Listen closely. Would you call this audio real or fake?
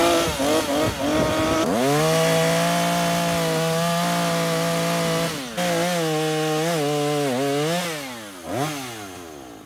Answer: real